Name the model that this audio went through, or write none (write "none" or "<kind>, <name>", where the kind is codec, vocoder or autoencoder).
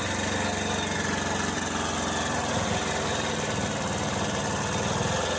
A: none